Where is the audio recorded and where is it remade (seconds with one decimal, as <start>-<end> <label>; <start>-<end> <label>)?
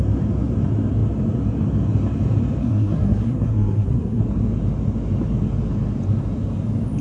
0.0-2.6 recorded; 2.6-4.2 remade; 4.2-7.0 recorded